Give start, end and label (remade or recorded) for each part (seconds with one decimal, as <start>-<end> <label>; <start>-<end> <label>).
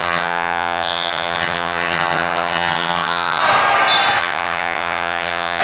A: 0.0-3.4 remade; 3.4-4.2 recorded; 4.2-5.6 remade